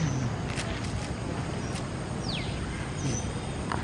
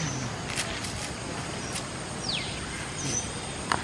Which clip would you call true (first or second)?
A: first